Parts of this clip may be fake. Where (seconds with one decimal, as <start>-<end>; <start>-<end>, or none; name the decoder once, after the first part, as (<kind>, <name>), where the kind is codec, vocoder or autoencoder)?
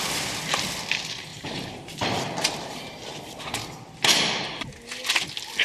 1.3-4.7 (vocoder, BigVGAN v2)